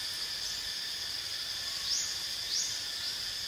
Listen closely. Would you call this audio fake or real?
real